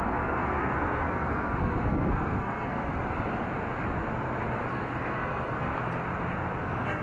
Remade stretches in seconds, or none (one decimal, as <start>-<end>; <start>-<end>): 0.0-2.9; 4.7-5.7; 6.6-7.0